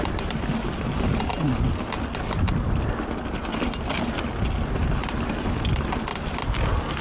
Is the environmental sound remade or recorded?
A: recorded